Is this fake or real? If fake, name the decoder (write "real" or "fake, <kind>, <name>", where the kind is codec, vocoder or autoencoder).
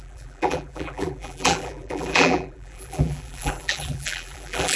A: fake, vocoder, BigVGAN v2